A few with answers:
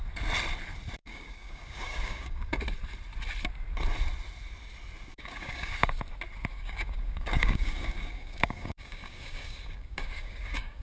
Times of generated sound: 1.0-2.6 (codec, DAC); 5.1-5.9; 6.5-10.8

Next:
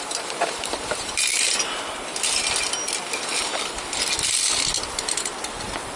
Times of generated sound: 0.0-1.3 (vocoder, BigVGAN v2); 4.9-6.0

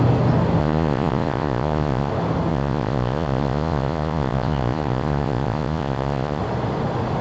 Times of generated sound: 0.6-2.1 (vocoder, Vocos); 2.5-6.4

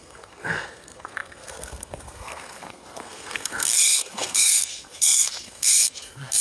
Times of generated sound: 0.0-6.4 (codec, SNAC)